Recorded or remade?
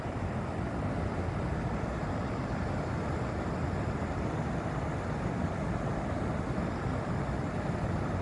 recorded